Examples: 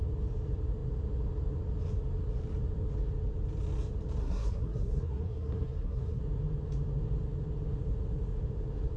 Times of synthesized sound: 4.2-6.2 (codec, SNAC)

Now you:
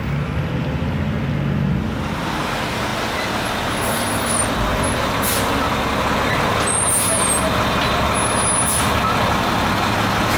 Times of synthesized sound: none

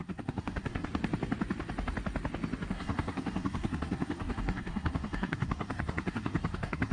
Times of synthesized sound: 0.0-0.9 (codec, SNAC); 2.7-6.9

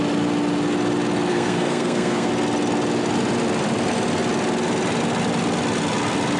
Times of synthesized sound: 1.3-2.3 (codec, SNAC)

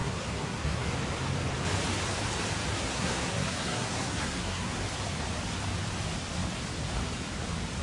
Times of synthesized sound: 0.0-0.9 (codec, SNAC); 2.7-4.8

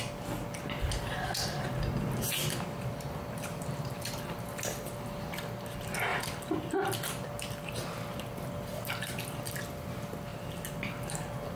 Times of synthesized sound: none